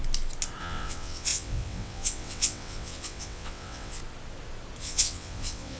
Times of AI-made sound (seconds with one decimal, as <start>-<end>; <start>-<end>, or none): 0.6-4.0; 4.8-5.8